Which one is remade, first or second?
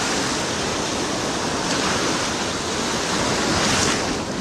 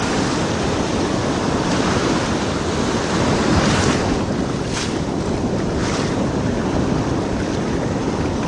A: second